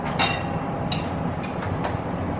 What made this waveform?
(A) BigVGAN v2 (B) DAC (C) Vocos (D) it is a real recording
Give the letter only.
D